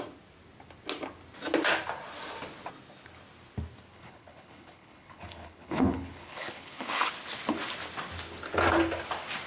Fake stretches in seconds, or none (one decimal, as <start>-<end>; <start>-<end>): 3.9-7.1